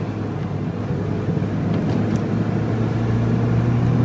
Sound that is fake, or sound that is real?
real